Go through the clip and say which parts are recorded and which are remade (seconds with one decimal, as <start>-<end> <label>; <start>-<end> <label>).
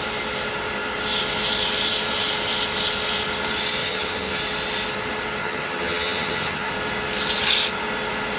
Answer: 0.0-3.8 recorded; 3.8-4.4 remade; 4.4-5.4 recorded; 5.4-6.7 remade; 6.7-8.4 recorded